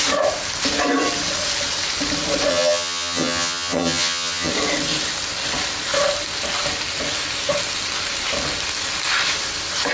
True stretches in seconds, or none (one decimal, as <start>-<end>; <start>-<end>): 0.0-2.5; 4.5-9.9